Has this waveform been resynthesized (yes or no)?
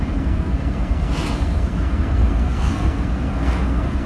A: yes